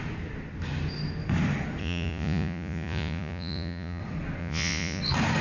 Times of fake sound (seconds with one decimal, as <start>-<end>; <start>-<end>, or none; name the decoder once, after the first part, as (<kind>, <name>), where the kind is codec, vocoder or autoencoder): 1.8-4.0 (vocoder, Vocos); 4.4-5.0